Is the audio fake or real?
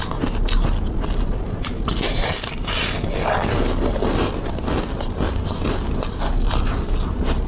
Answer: real